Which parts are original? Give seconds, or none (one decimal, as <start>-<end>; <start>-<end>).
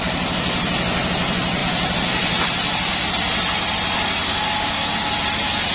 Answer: 0.0-4.2; 5.1-5.7